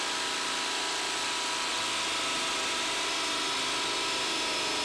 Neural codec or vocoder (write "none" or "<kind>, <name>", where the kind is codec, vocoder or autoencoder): none